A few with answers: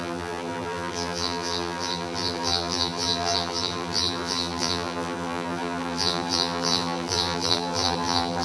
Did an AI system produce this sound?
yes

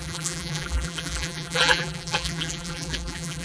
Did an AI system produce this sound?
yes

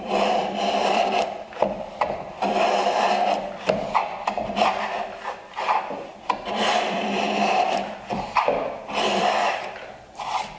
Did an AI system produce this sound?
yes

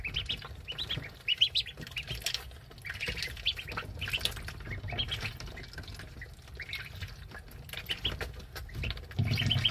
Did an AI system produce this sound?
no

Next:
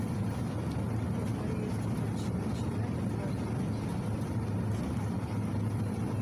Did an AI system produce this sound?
no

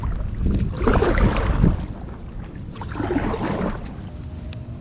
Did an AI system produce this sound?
no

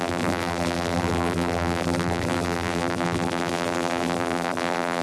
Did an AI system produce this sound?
yes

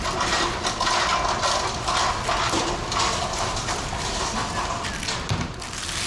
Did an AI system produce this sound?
no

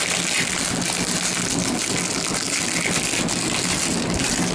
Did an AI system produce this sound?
no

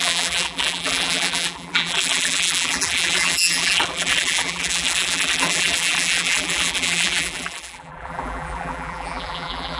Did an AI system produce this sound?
yes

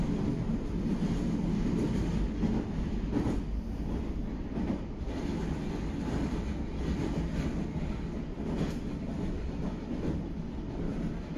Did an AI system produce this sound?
no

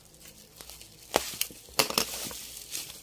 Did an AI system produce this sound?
no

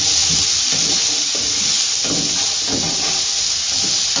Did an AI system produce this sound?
no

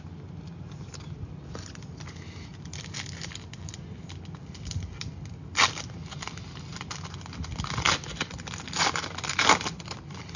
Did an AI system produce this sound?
no